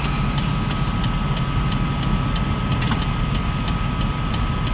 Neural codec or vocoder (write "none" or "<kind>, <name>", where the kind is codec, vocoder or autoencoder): none